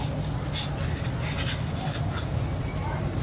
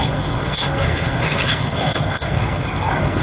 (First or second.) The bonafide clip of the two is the first